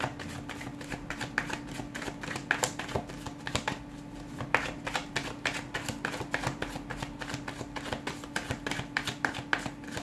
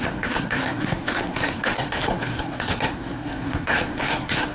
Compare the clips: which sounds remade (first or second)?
second